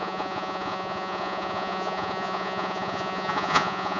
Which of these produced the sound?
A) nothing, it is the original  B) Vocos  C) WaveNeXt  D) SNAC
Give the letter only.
B